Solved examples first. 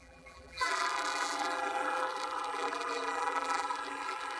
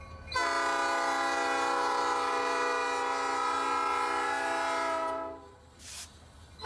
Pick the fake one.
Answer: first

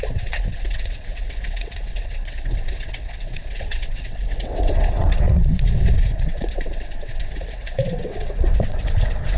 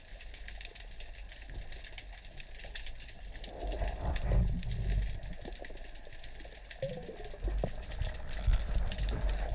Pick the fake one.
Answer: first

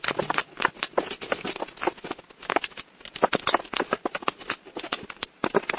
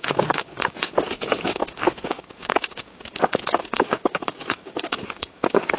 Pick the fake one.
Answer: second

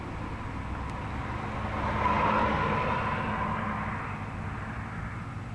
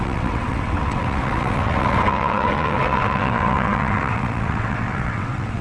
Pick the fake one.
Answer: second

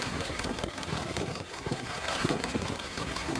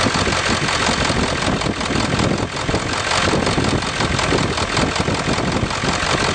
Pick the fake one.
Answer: first